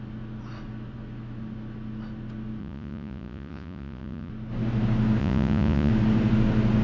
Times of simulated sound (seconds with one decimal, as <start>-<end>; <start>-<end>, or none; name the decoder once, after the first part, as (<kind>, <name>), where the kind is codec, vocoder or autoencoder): 2.6-4.3 (vocoder, Vocos); 5.2-5.9